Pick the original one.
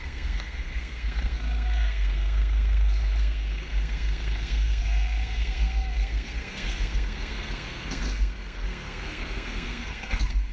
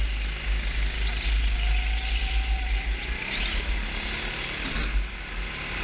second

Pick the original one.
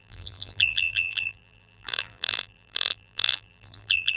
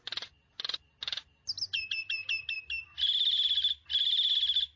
second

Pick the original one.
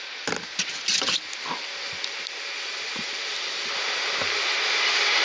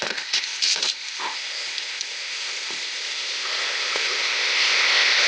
first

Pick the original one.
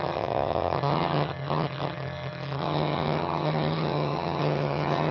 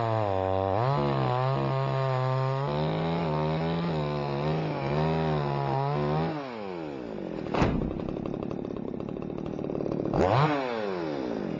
second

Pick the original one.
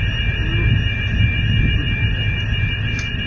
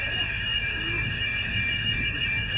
first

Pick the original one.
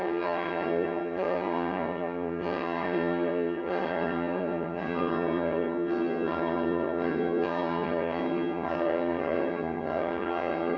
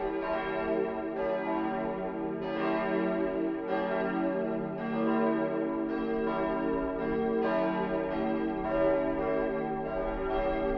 second